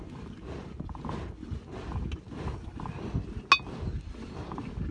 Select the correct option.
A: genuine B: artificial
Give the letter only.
A